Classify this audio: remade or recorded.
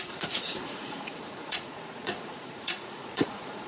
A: remade